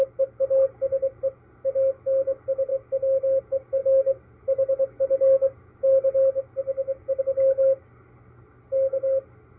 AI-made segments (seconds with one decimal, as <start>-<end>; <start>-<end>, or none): none